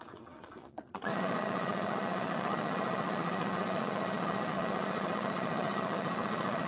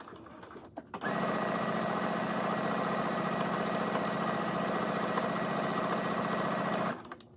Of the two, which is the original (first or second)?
second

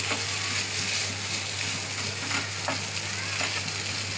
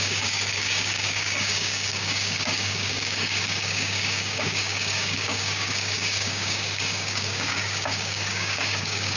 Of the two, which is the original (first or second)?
first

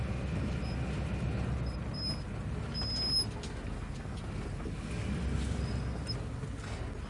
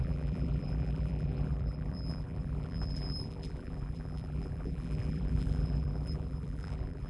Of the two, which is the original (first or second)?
first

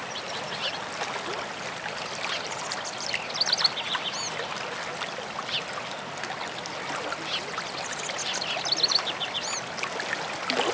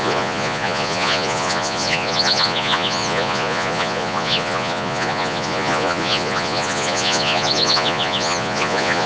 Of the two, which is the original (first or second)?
first